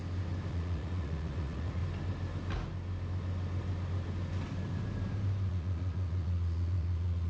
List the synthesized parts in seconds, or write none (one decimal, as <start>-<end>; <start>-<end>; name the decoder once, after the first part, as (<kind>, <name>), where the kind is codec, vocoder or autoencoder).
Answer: 0.5-1.8 (vocoder, Vocos); 5.5-7.3